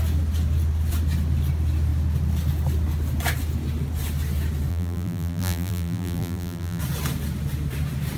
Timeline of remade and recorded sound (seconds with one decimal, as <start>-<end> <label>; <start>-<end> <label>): 0.0-4.7 recorded; 4.7-6.8 remade; 6.8-8.2 recorded